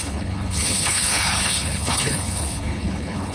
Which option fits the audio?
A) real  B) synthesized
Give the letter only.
B